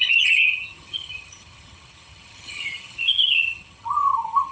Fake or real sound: fake